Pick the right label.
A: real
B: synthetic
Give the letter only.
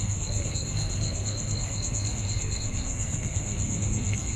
B